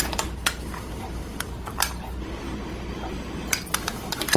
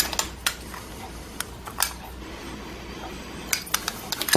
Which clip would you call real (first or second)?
second